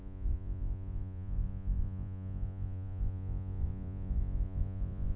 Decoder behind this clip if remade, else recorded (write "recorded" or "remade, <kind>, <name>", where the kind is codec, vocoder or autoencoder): remade, vocoder, Vocos